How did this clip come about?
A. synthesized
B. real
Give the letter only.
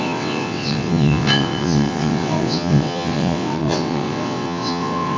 A